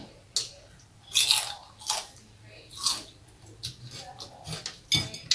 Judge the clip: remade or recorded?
recorded